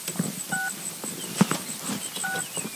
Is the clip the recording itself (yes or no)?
yes